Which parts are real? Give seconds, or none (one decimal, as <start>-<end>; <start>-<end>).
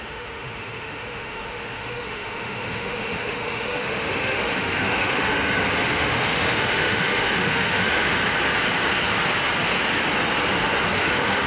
5.3-5.9; 8.2-11.0